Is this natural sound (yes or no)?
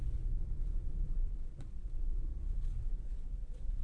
no